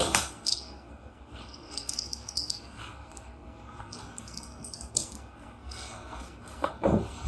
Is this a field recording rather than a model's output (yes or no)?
no